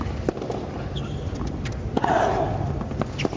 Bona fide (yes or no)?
yes